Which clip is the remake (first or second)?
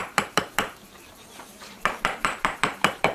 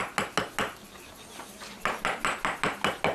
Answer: first